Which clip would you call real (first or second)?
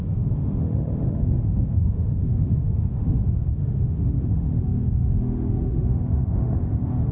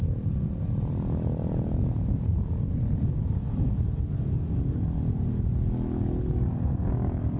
second